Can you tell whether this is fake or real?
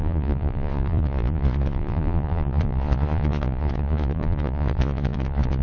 fake